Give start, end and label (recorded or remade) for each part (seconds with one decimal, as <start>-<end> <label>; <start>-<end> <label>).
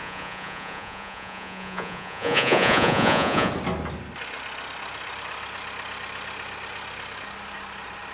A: 0.0-3.5 remade; 3.5-8.1 recorded